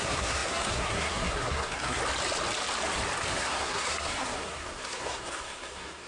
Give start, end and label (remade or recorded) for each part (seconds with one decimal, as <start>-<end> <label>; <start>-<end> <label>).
0.0-2.0 remade; 2.0-3.3 recorded; 3.3-6.1 remade